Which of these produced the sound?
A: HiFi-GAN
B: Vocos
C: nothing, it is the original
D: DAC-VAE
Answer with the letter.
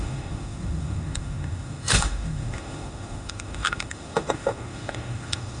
D